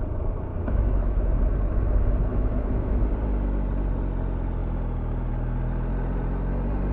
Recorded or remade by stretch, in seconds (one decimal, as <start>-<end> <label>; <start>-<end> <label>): 0.0-0.5 recorded; 0.5-1.4 remade; 1.4-2.3 recorded; 2.3-3.0 remade; 3.0-6.9 recorded